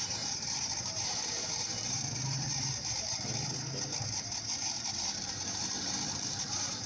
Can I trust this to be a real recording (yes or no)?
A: no